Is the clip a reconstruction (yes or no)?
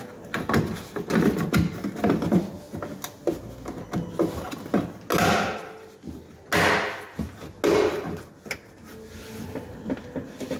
no